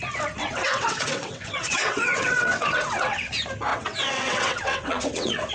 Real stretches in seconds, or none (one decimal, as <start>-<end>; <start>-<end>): 0.0-0.4; 3.3-3.7